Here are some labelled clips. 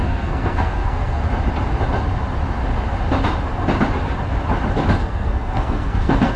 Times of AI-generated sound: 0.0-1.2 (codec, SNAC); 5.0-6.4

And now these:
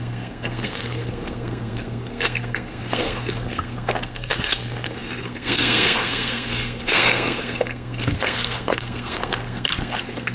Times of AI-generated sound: 0.0-10.3 (codec, SNAC)

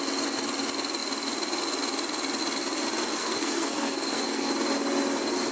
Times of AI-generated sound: 3.2-4.5 (codec, SNAC)

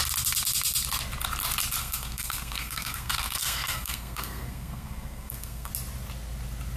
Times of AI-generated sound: 1.8-5.7 (codec, SNAC)

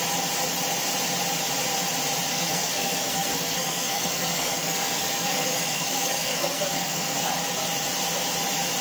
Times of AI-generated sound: 2.3-7.3 (codec, SNAC)

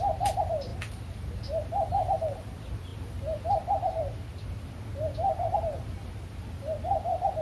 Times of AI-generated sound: none

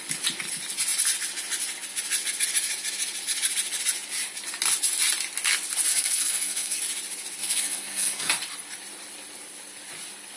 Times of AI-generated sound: 5.9-6.8 (codec, SNAC); 7.4-8.3

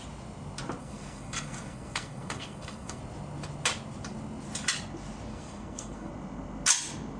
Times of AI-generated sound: 0.8-3.0 (codec, SNAC); 5.3-6.1